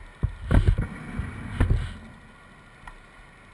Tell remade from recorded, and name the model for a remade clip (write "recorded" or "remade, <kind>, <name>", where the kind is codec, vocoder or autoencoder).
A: recorded